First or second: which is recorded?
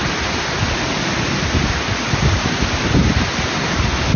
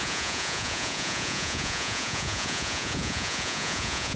first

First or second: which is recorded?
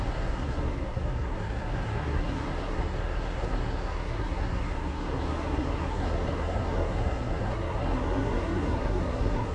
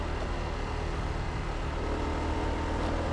second